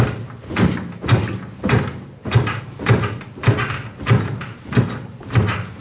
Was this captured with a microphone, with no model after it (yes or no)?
yes